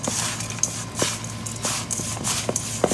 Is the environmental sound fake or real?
real